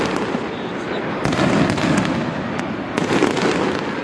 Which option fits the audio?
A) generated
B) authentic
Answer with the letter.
B